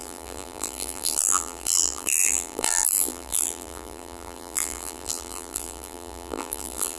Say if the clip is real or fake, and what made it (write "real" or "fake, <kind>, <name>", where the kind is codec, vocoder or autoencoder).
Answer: fake, vocoder, BigVGAN v2